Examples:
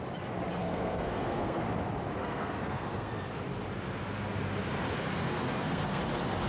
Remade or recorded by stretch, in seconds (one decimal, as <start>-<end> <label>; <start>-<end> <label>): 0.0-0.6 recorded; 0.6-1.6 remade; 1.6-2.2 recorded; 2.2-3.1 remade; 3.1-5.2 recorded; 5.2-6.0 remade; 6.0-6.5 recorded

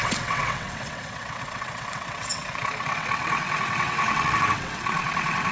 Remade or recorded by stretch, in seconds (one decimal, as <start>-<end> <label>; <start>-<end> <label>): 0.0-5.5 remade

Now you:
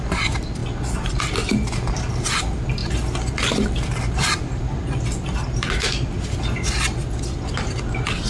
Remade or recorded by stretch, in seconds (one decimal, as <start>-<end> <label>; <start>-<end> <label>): 0.0-8.3 recorded

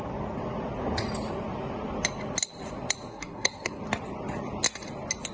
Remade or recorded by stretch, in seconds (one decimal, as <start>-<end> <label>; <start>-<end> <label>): 0.0-3.1 recorded; 3.1-3.8 remade; 3.8-5.3 recorded